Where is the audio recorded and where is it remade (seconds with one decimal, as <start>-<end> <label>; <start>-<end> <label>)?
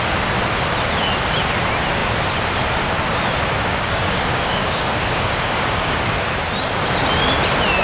0.0-3.7 recorded; 3.7-6.0 remade; 6.0-7.8 recorded